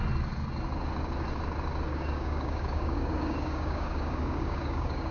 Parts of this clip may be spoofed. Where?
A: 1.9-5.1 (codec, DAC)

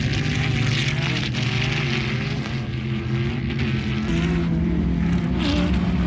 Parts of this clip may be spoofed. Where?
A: none

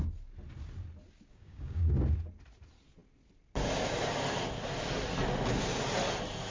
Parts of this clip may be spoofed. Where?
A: 1.3-1.8 (codec, DAC)

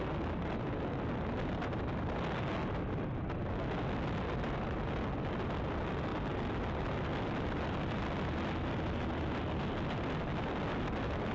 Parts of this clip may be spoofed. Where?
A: none

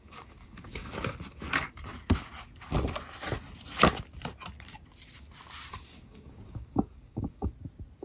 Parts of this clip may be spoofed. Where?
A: 0.0-1.9 (codec, DAC); 5.7-7.5